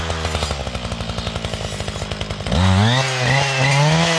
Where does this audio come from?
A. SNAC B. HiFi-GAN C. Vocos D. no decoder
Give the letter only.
D